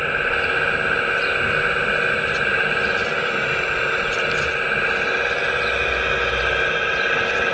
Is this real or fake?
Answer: real